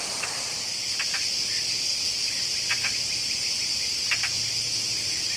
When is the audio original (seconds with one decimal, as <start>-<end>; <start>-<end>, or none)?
0.0-5.4